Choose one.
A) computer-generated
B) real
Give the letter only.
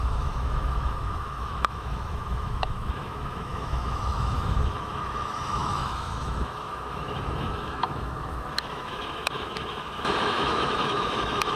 A